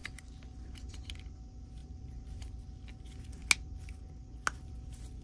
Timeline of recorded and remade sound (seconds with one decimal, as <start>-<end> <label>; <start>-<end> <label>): 0.0-1.0 remade; 1.0-1.8 recorded; 1.8-2.5 remade; 2.5-5.2 recorded